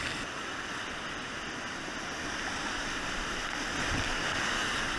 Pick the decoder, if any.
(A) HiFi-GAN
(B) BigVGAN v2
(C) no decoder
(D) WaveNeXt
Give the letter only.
C